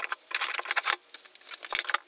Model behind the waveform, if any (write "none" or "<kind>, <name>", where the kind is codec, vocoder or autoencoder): none